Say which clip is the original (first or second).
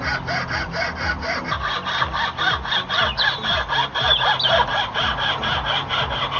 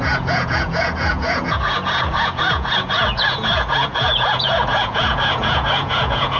first